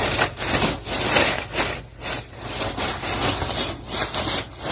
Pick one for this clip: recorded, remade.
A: recorded